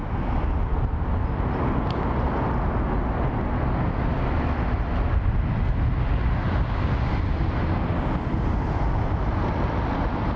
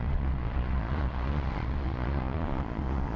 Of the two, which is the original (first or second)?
first